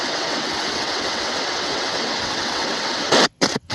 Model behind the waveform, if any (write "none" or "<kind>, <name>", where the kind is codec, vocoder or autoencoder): vocoder, WaveNeXt